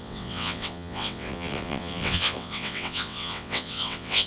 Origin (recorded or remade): remade